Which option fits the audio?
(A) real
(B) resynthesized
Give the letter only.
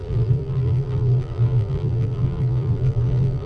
B